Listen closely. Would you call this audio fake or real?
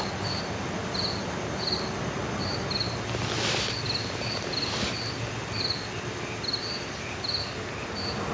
real